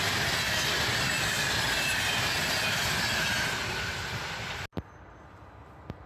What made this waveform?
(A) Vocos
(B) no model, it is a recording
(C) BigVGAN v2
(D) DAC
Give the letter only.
B